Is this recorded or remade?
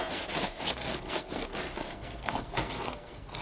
remade